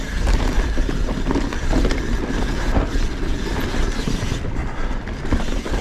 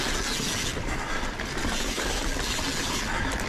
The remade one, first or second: first